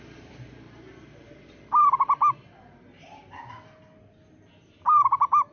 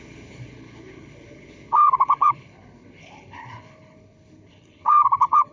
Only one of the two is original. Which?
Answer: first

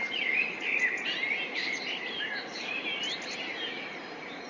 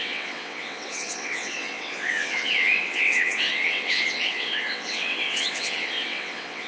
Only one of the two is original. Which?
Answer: first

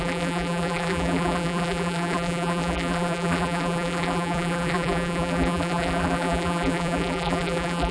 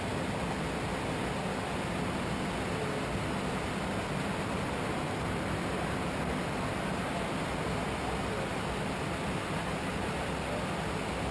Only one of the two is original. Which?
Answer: second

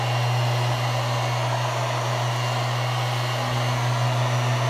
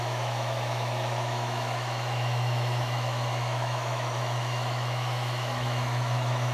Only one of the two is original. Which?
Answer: first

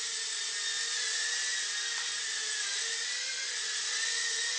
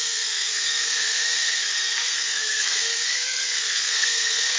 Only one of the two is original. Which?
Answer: first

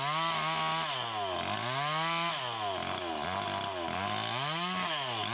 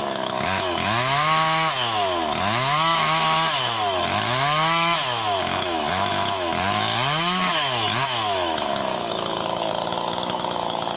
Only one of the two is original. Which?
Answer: first